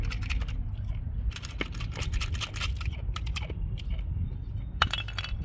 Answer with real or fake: real